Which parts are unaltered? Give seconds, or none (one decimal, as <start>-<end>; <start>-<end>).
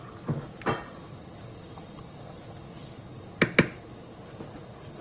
0.0-1.0; 3.1-5.0